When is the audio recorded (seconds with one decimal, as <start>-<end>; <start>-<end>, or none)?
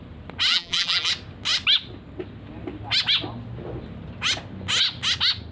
0.0-0.5; 1.1-5.5